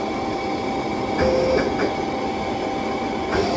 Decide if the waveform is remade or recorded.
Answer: recorded